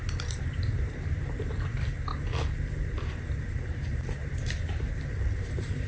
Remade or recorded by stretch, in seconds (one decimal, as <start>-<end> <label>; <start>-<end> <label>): 0.0-2.1 remade; 2.1-3.0 recorded; 3.0-5.9 remade